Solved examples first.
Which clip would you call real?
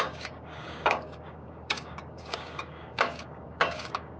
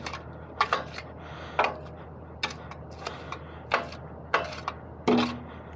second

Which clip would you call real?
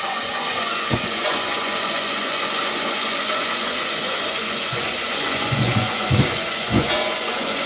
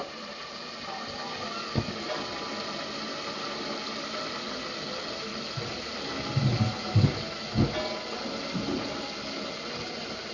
second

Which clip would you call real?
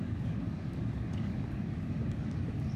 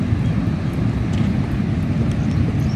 second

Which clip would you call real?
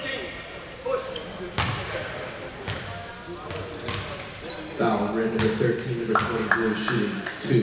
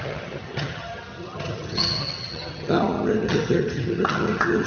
first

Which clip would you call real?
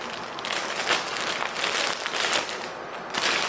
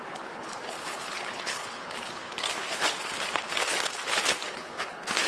first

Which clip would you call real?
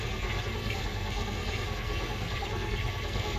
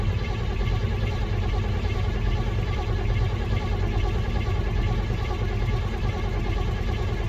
second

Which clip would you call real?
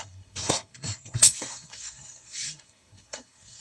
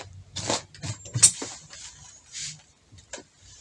second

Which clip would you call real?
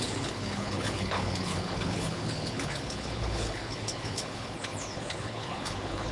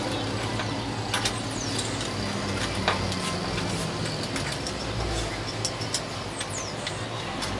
second